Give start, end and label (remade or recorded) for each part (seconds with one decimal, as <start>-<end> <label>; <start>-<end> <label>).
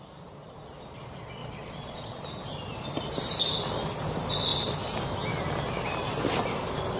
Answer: 0.0-1.4 recorded; 1.4-2.2 remade; 2.2-7.0 recorded